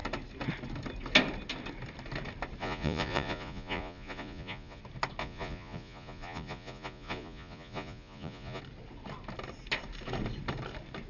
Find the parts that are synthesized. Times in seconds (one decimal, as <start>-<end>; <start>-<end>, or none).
2.6-4.8; 5.2-8.6